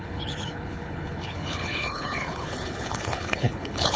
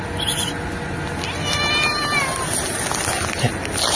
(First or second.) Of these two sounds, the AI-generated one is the first